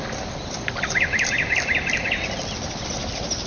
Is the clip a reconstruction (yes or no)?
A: no